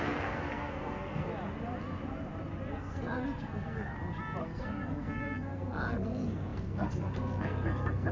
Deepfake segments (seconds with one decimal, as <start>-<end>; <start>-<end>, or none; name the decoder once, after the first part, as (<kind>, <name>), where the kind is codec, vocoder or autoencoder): 0.0-1.3 (codec, SNAC); 2.7-3.9; 4.4-8.1